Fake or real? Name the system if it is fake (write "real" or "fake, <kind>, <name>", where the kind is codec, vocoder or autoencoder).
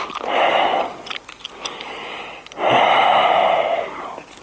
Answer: real